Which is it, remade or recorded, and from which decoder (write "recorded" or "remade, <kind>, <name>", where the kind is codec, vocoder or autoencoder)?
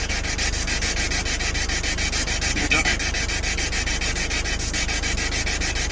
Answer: recorded